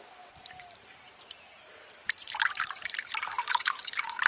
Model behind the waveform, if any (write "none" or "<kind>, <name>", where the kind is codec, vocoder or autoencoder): vocoder, BigVGAN v2